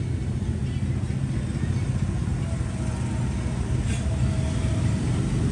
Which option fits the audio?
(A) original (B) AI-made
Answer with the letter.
A